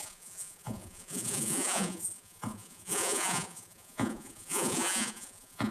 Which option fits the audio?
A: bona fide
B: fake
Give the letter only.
B